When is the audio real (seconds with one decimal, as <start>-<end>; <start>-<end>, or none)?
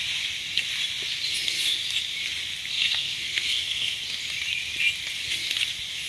0.0-2.7; 4.0-6.1